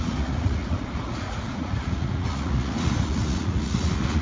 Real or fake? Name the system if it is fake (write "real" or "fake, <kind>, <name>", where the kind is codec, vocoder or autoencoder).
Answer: fake, vocoder, Vocos